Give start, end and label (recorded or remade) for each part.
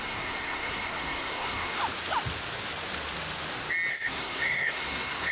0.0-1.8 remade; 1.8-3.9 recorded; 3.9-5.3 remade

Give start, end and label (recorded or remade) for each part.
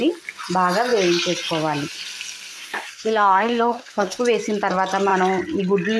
0.0-2.5 recorded; 2.5-4.2 remade; 4.2-6.0 recorded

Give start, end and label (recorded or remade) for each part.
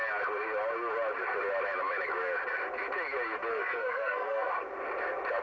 0.0-3.5 recorded; 3.5-4.5 remade; 4.5-5.4 recorded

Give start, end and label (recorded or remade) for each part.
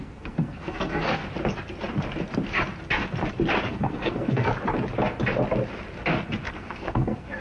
0.0-1.2 remade; 1.2-3.7 recorded; 3.7-4.5 remade; 4.5-6.5 recorded; 6.5-7.4 remade